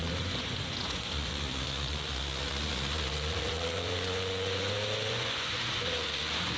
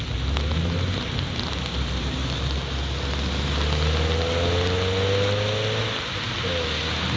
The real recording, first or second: second